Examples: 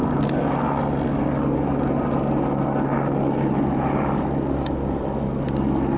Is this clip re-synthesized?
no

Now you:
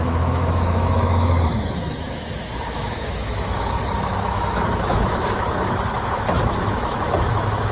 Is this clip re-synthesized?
yes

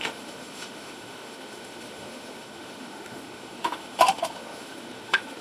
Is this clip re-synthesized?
yes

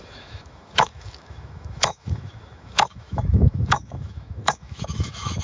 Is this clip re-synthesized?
yes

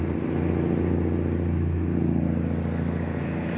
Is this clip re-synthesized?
no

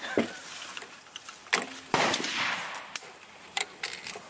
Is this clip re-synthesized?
no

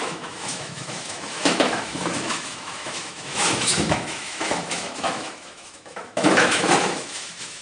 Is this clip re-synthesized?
yes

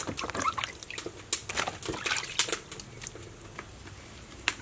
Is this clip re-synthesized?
no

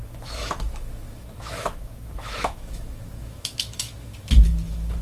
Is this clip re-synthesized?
yes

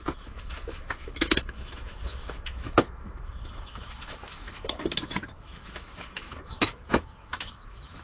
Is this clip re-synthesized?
yes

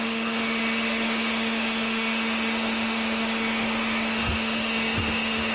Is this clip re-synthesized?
yes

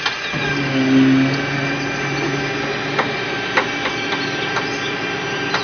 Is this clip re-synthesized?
no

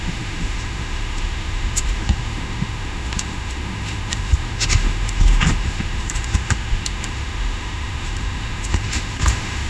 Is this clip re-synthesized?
yes